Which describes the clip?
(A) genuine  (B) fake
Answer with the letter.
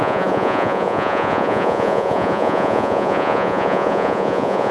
B